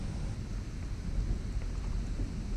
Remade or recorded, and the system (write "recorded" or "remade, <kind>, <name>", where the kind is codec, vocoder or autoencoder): recorded